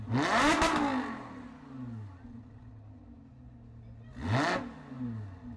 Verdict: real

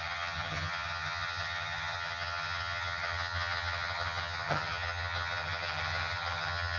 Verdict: fake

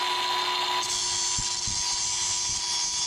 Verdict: real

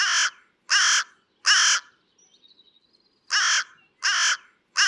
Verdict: real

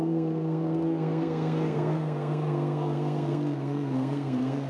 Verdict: fake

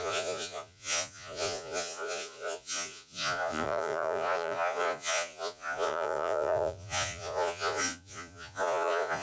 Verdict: fake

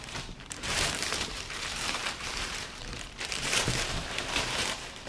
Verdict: fake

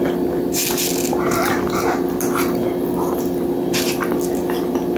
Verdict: real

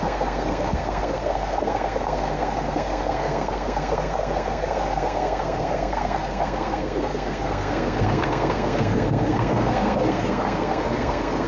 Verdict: fake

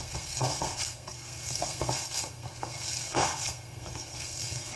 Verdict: fake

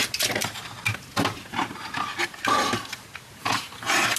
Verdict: real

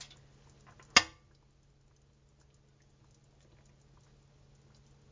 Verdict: real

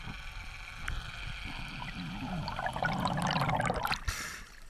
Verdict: real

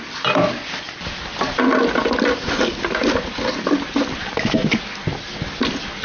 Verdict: real